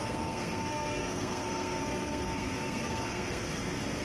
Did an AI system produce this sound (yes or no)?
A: yes